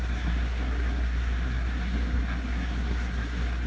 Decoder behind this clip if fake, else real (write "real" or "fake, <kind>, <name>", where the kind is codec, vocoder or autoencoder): fake, codec, SNAC